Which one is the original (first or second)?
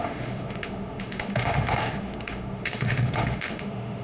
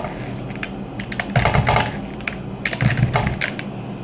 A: second